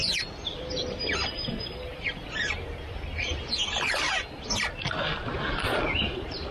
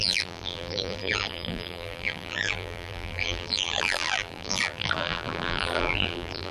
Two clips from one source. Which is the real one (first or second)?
first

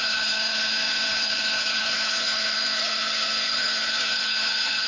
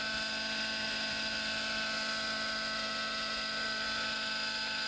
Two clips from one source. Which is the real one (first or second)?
second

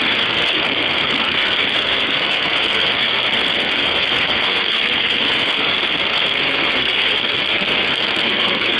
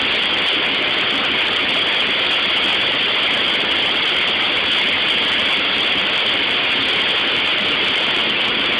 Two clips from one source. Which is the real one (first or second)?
second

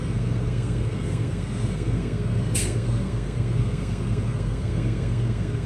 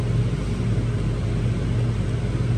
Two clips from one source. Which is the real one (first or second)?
second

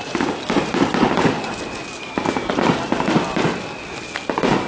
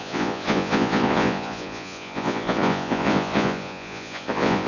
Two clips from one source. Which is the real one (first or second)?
first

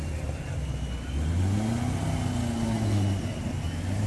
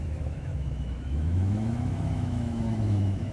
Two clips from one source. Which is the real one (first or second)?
first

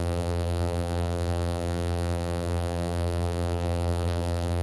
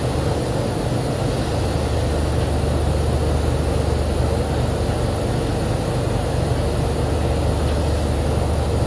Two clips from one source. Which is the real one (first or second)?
second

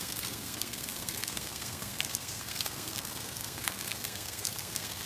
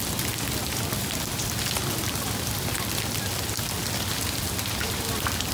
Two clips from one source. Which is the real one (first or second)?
second